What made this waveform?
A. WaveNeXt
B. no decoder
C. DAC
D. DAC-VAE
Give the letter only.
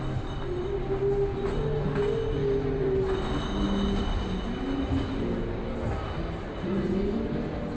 B